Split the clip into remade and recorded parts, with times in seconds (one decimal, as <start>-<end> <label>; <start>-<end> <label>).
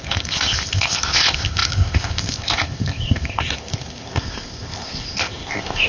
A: 0.0-5.9 remade